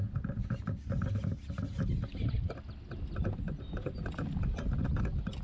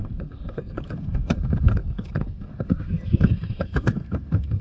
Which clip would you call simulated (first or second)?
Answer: second